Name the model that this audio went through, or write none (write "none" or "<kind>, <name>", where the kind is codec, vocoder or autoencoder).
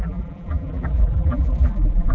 vocoder, BigVGAN v2